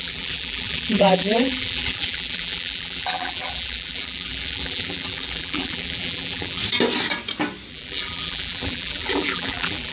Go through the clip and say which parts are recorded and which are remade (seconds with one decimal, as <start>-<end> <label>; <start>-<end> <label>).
0.0-6.6 remade; 6.6-7.7 recorded; 7.7-9.9 remade